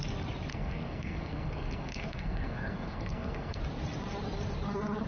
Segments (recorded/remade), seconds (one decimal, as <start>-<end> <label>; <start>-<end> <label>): 0.0-0.5 recorded; 0.5-3.6 remade; 3.6-5.1 recorded